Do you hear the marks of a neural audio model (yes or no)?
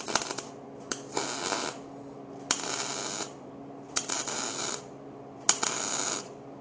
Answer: no